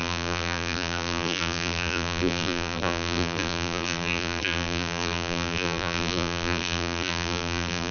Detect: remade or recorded remade